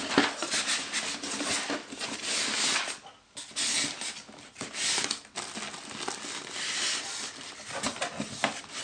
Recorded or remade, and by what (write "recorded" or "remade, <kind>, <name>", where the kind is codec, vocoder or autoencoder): recorded